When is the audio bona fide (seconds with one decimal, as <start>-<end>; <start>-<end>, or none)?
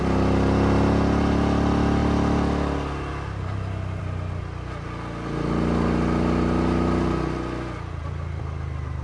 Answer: 0.0-9.0